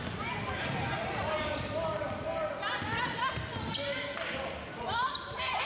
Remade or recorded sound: recorded